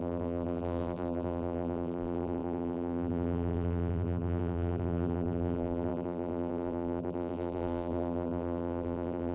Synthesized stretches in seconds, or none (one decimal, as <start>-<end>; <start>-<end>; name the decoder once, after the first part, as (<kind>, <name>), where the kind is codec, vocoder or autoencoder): 0.0-9.3 (vocoder, BigVGAN v2)